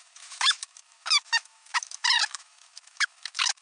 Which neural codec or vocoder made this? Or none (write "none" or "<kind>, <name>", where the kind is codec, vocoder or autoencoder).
autoencoder, DAC-VAE